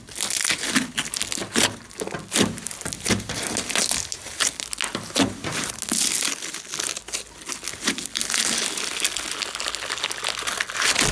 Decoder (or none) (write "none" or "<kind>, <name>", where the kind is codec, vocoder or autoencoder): none